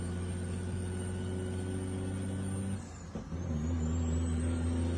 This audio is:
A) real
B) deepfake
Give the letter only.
A